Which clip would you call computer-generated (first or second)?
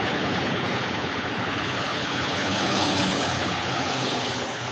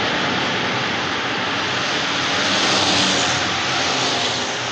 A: first